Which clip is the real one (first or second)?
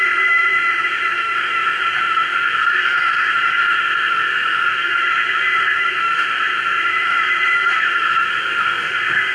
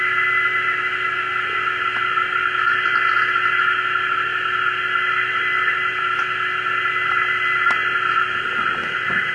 second